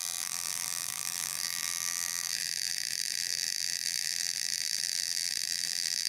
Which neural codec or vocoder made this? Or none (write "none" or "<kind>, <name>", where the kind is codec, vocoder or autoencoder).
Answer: vocoder, BigVGAN v2